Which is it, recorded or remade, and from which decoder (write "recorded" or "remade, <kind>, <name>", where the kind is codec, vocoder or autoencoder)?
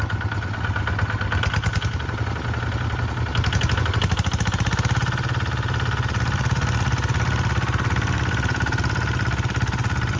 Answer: recorded